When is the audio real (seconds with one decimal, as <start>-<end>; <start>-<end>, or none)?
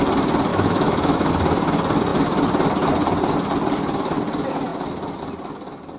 0.0-0.5; 1.3-6.0